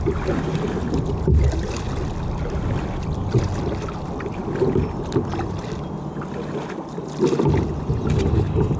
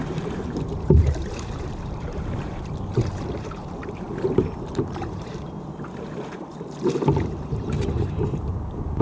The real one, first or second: first